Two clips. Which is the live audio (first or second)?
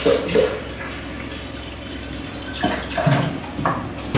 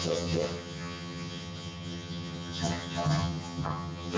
first